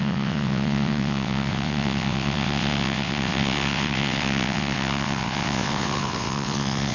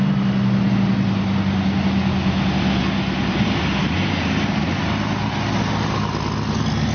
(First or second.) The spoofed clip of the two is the first